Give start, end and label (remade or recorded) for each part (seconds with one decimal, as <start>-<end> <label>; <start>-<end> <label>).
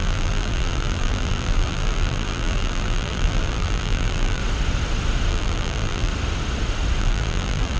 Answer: 0.0-4.4 remade; 4.4-5.3 recorded; 5.3-6.1 remade; 6.1-7.0 recorded; 7.0-7.8 remade